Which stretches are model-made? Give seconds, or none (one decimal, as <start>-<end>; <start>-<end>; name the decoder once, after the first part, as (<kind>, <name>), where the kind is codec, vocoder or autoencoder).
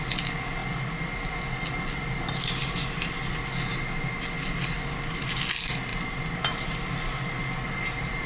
none